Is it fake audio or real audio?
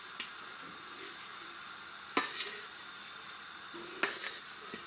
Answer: real